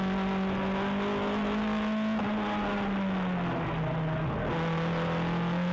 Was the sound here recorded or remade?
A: recorded